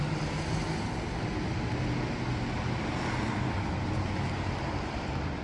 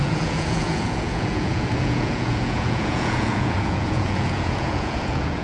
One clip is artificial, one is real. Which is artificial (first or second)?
second